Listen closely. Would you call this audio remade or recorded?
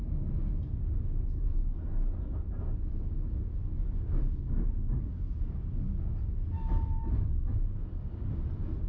recorded